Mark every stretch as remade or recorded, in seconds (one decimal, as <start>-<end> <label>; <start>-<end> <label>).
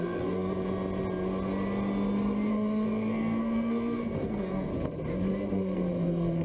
0.0-0.5 remade; 0.5-2.5 recorded; 2.5-4.7 remade; 4.7-5.5 recorded; 5.5-6.4 remade